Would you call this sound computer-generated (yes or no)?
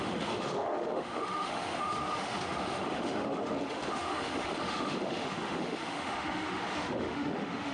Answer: yes